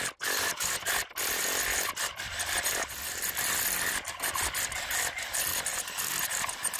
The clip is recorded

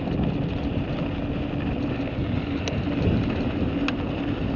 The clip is recorded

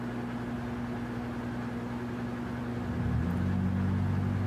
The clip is recorded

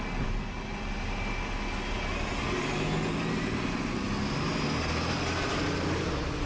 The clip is recorded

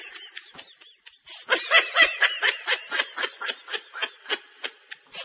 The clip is recorded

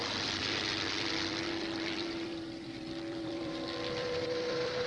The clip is remade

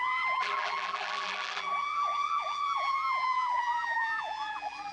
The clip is remade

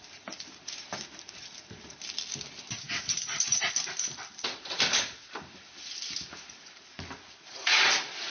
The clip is remade